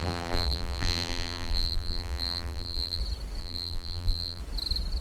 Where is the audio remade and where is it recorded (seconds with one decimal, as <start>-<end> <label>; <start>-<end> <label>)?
0.0-3.0 remade; 3.0-3.4 recorded; 3.4-4.4 remade; 4.4-5.0 recorded